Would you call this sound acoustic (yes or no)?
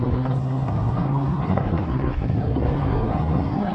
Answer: no